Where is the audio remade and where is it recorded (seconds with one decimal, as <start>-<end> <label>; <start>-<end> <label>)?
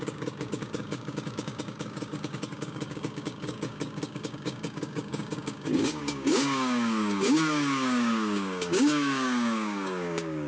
0.0-10.5 remade